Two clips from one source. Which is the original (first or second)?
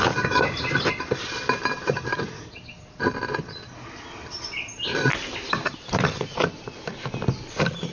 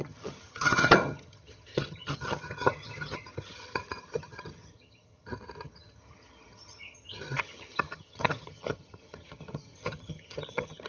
first